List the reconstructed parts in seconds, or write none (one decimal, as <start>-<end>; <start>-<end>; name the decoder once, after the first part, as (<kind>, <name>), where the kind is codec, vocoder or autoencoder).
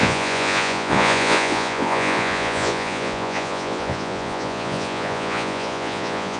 0.0-6.4 (vocoder, Vocos)